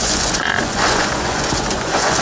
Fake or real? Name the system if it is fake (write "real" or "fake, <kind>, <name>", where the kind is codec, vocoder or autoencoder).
fake, vocoder, Vocos